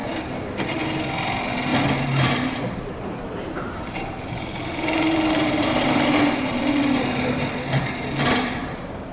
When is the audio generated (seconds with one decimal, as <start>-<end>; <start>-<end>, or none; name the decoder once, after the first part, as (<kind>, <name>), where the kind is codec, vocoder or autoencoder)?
1.7-6.8 (vocoder, BigVGAN v2); 8.6-9.1